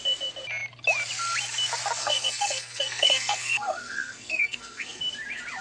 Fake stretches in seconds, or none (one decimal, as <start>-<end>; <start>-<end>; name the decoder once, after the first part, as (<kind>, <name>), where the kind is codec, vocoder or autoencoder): 2.0-5.0 (codec, SNAC)

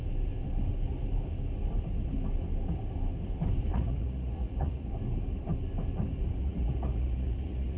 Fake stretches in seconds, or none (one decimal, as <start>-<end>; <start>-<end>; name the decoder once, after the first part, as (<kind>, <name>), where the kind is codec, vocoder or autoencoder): 3.7-4.9 (vocoder, Vocos); 6.4-7.8

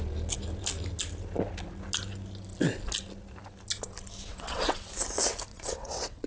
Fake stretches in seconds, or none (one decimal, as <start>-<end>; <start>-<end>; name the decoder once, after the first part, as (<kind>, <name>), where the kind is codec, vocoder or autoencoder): 4.3-4.9 (vocoder, WaveNeXt); 5.5-6.3

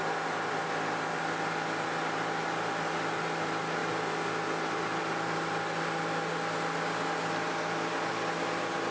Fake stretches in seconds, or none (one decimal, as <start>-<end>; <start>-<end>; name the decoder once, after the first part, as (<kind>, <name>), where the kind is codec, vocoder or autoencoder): none

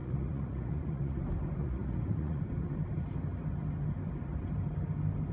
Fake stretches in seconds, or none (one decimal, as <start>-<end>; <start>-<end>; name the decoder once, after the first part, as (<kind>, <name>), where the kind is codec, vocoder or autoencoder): 0.0-1.2 (vocoder, Vocos); 1.6-2.4

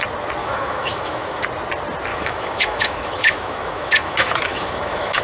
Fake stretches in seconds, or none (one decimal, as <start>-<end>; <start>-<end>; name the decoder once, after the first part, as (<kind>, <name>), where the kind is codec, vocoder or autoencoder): 0.4-1.4 (autoencoder, DAC-VAE); 2.1-5.2